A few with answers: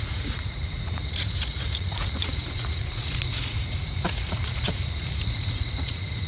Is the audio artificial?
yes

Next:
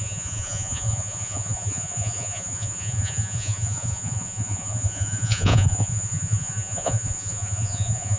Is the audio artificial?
yes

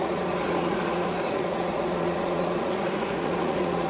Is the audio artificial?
yes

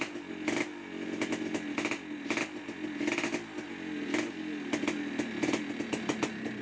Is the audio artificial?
no